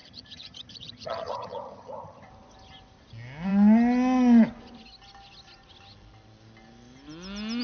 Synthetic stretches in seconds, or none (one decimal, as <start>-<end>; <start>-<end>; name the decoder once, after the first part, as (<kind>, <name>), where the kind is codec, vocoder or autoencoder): 0.0-2.3 (vocoder, HiFi-GAN)